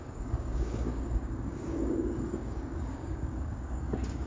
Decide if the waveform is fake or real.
fake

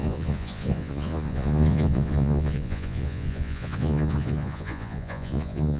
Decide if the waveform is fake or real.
fake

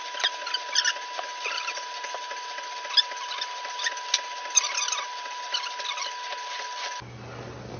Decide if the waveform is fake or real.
real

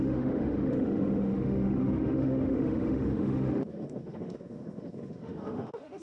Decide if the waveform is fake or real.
fake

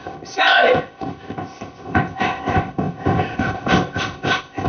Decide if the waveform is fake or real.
fake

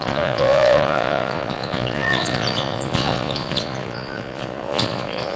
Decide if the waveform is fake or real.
fake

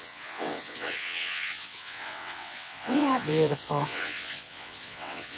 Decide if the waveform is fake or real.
fake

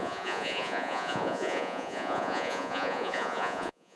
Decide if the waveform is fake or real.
fake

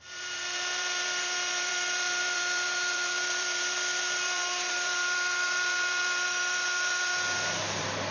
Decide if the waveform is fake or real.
fake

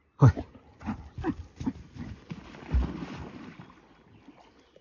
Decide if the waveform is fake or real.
real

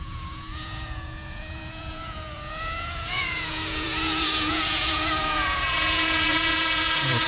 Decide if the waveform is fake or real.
fake